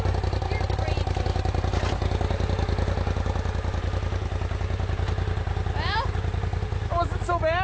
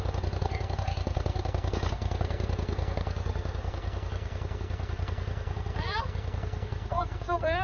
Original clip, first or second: first